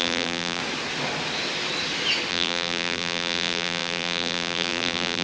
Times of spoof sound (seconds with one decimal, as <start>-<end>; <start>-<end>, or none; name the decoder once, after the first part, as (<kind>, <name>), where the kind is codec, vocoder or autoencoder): 0.0-0.6 (vocoder, BigVGAN v2); 2.3-5.2